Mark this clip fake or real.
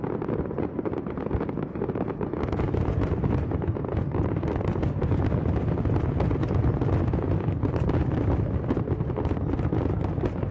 real